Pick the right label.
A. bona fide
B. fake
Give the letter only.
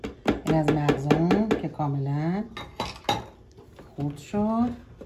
A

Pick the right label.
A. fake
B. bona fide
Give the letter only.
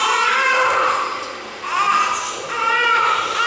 B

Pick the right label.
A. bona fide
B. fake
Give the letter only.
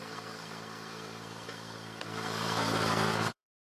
B